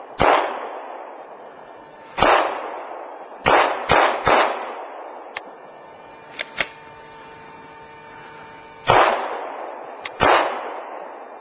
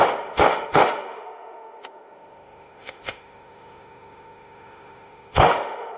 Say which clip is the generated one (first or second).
second